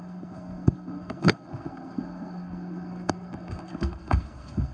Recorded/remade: remade